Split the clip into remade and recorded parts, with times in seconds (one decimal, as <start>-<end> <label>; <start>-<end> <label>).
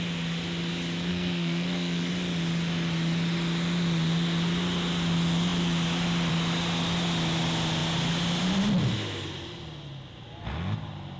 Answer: 0.0-1.1 recorded; 1.1-2.1 remade; 2.1-11.2 recorded